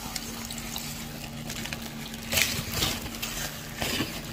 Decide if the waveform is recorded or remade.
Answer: recorded